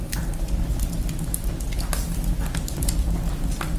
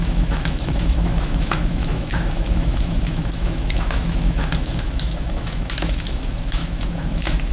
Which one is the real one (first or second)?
first